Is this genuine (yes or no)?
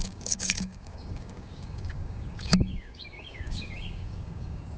no